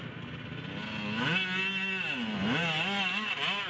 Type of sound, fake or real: real